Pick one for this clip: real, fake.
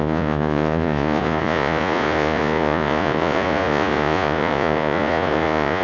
fake